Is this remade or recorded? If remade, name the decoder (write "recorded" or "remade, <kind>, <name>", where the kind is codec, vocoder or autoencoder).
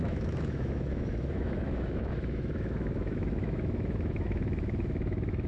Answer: remade, autoencoder, DAC-VAE